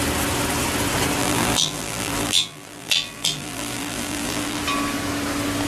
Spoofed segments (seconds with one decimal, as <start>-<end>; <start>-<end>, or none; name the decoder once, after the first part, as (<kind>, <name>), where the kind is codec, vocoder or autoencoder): 1.2-4.6 (vocoder, BigVGAN v2)